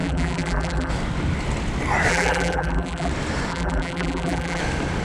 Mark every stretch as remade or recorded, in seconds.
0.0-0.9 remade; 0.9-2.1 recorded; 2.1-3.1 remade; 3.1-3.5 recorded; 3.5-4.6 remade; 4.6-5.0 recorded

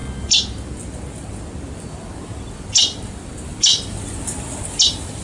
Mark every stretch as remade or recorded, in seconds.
0.0-5.2 recorded

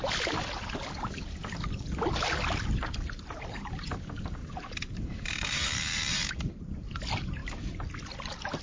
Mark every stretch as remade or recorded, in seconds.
0.0-4.4 recorded; 4.4-6.5 remade; 6.5-8.6 recorded